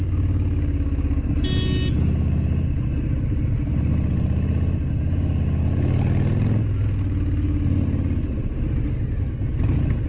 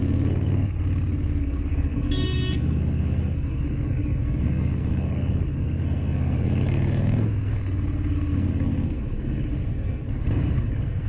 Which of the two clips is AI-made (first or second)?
second